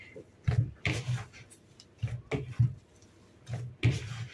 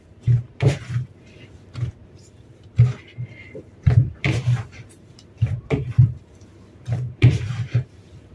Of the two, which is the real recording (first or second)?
first